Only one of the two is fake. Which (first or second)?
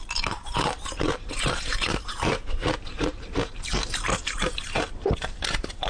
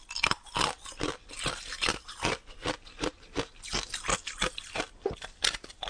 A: first